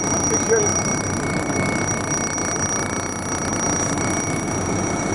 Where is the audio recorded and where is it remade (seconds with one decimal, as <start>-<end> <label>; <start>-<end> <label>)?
0.0-0.7 recorded; 0.7-1.3 remade; 1.3-5.1 recorded